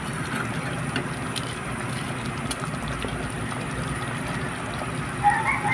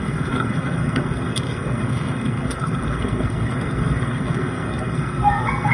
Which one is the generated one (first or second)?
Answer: second